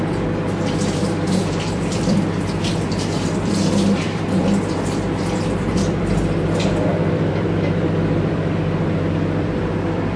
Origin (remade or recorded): remade